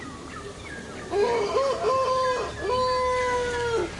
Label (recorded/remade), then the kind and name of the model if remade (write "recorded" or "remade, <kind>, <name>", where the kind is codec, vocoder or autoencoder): recorded